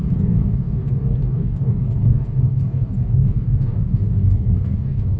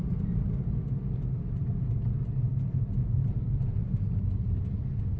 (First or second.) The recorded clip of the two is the second